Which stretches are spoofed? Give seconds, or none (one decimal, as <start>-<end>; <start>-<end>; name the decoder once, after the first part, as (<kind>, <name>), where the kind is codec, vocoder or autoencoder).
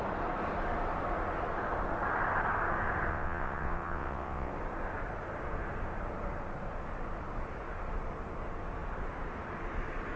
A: 3.1-4.5 (vocoder, WaveNeXt)